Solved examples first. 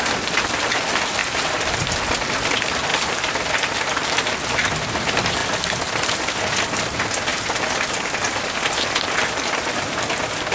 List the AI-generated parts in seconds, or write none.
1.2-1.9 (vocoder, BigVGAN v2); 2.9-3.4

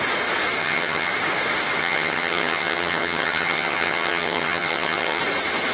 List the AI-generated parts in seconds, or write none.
0.6-1.1 (vocoder, HiFi-GAN); 1.8-5.2

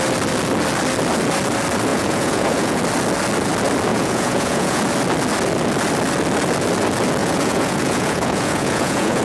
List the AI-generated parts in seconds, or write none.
1.9-2.8 (vocoder, Vocos); 3.9-4.8; 7.2-9.2